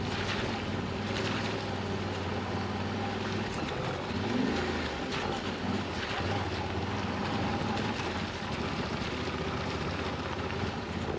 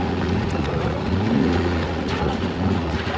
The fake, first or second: second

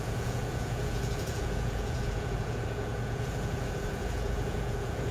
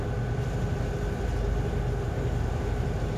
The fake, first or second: first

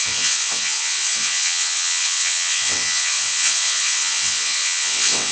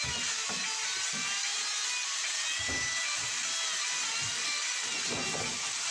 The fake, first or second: first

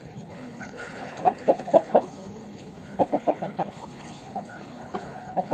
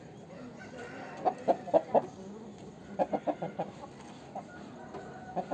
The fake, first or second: first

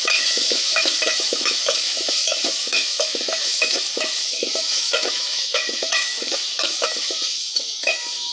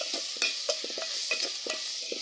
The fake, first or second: first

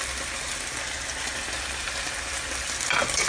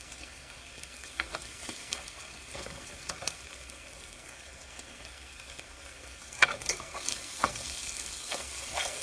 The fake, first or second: second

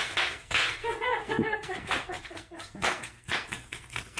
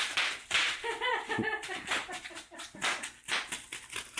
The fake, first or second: first